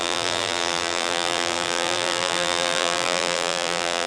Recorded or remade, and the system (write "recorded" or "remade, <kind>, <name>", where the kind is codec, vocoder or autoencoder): remade, vocoder, BigVGAN v2